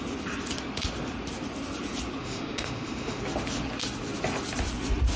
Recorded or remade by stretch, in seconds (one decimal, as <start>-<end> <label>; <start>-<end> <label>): 0.0-2.2 recorded; 2.2-3.2 remade; 3.2-5.2 recorded